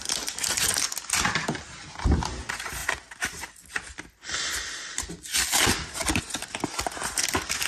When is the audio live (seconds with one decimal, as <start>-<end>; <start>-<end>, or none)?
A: 0.0-7.7

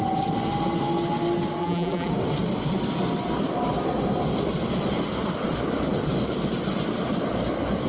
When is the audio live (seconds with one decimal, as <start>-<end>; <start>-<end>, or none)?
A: 0.0-1.6; 2.1-7.9

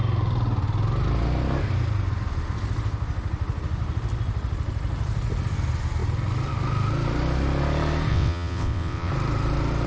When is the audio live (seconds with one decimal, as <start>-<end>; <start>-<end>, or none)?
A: 0.0-8.1; 9.1-9.9